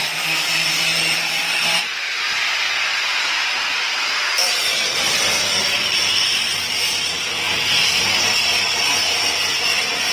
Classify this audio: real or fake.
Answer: fake